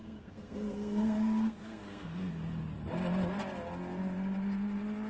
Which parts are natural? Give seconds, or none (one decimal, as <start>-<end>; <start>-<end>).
2.3-5.1